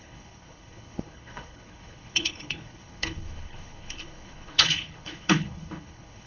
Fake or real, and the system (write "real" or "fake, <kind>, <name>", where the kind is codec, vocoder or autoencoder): fake, codec, HILCodec